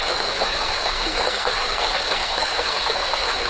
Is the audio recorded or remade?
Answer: remade